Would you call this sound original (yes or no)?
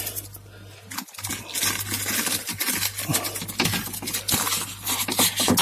yes